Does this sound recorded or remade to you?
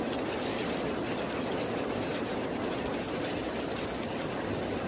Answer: recorded